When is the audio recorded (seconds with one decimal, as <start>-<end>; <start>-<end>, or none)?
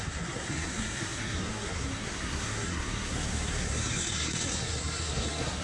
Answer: none